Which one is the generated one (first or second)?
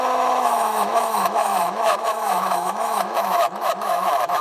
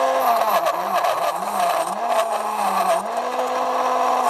first